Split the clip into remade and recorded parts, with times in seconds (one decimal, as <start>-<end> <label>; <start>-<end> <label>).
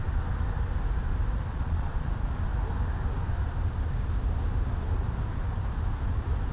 0.0-1.5 recorded; 1.5-2.1 remade; 2.1-6.5 recorded